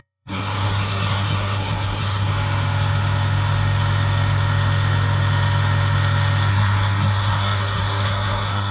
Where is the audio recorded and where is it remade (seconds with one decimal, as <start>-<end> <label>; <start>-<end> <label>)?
0.0-2.3 remade; 2.3-6.5 recorded; 6.5-8.7 remade